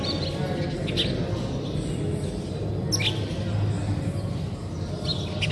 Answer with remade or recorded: recorded